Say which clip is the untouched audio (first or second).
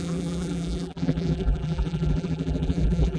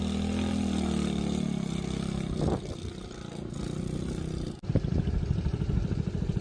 second